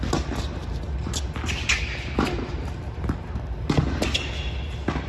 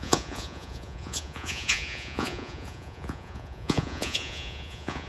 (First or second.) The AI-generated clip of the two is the second